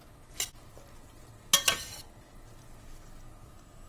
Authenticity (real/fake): real